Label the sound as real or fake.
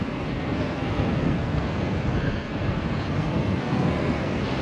fake